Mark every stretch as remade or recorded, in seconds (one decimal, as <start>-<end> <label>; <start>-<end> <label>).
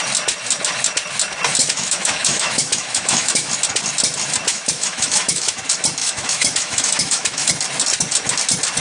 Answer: 0.0-1.6 recorded; 1.6-3.5 remade; 3.5-4.5 recorded; 4.5-5.6 remade; 5.6-6.0 recorded; 6.0-7.5 remade; 7.5-8.8 recorded